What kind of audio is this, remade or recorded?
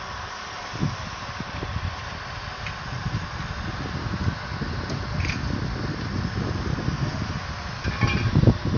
recorded